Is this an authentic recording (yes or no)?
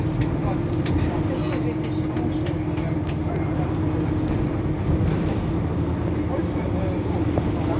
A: yes